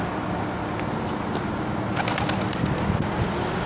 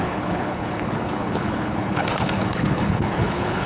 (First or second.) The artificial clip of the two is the second